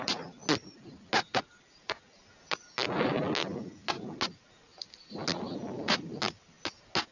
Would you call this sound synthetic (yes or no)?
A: no